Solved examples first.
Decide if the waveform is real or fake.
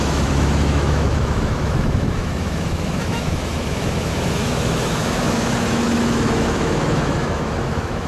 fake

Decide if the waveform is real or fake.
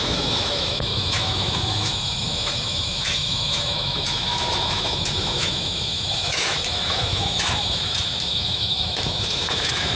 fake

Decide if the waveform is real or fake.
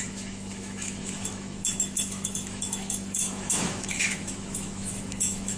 fake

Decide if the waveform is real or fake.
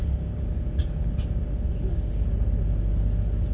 real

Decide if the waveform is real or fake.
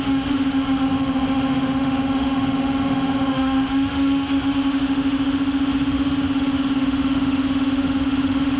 fake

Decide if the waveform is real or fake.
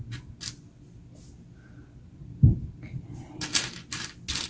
real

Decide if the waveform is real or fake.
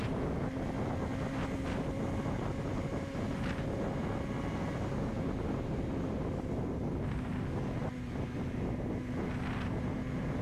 real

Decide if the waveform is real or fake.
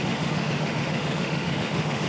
fake